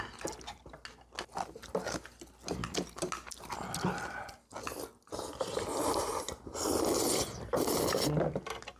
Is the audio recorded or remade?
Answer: recorded